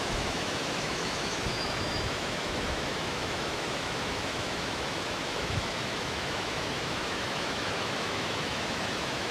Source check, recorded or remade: remade